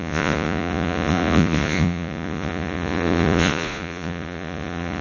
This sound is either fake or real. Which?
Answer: fake